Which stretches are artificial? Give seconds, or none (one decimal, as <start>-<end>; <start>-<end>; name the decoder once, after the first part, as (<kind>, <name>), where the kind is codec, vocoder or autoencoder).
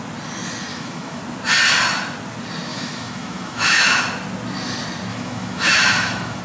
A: 0.7-1.2 (autoencoder, DAC-VAE); 2.7-4.0; 5.1-6.4